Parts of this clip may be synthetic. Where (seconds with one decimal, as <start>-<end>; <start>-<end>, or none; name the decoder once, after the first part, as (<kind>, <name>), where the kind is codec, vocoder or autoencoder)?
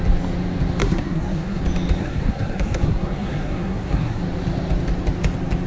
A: 0.8-1.6 (codec, SNAC); 2.0-4.2